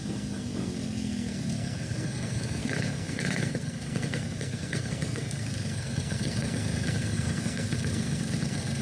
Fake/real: fake